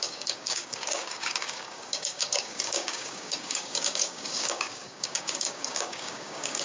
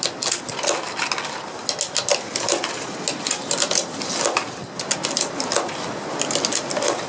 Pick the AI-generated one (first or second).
first